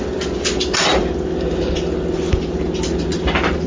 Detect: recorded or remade recorded